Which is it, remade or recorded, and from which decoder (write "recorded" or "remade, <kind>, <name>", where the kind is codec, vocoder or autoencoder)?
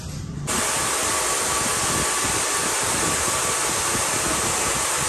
recorded